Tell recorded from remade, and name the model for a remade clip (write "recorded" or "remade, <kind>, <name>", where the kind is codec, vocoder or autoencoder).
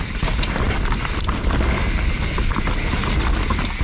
recorded